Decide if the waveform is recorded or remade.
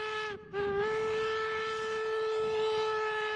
recorded